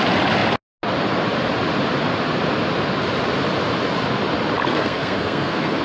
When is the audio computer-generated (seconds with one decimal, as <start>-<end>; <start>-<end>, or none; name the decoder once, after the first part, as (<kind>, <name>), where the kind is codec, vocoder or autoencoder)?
4.7-5.8 (codec, SNAC)